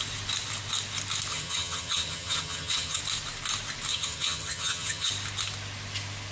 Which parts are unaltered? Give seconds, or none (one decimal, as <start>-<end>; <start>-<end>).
0.0-1.3; 3.0-3.9; 5.1-6.3